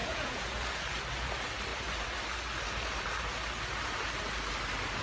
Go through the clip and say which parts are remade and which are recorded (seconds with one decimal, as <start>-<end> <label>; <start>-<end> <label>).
0.0-0.6 remade; 0.6-5.0 recorded